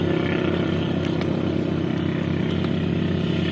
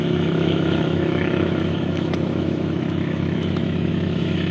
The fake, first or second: second